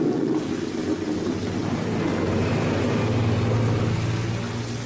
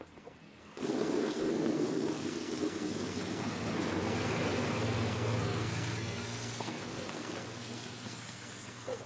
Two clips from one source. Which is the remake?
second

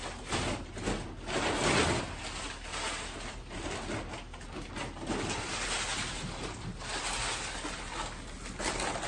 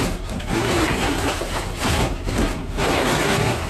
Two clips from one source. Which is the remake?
second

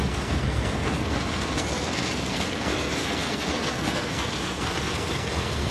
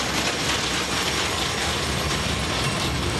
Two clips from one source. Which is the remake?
first